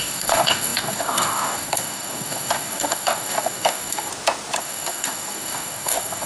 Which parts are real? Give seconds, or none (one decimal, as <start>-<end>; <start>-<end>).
4.1-4.6